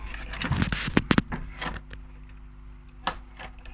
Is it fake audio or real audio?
real